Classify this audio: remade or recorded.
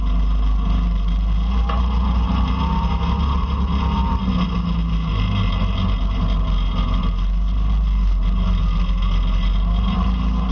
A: recorded